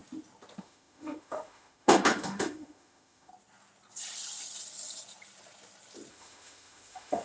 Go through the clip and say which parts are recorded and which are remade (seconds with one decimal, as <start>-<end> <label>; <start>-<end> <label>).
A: 0.0-0.6 recorded; 0.6-3.3 remade; 3.3-6.1 recorded; 6.1-7.2 remade